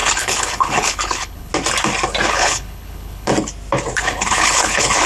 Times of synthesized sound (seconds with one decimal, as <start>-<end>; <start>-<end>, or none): 0.0-1.5; 2.3-3.3; 4.0-5.1